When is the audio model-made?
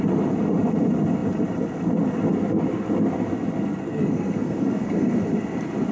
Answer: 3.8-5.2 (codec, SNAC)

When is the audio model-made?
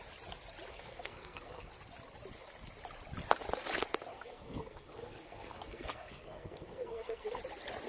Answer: 0.7-1.7 (codec, SNAC); 4.1-7.4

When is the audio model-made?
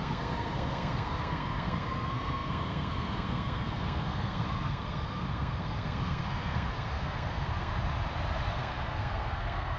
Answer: 0.0-7.7 (codec, SNAC); 8.5-9.8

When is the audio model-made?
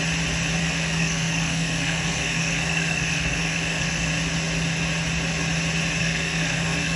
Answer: 0.6-4.1 (codec, SNAC); 6.0-7.0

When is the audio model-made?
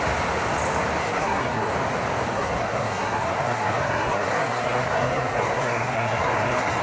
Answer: 1.0-1.7 (codec, SNAC); 2.3-6.8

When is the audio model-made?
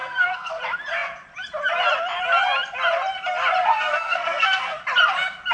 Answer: 0.0-0.6 (codec, SNAC); 3.6-4.8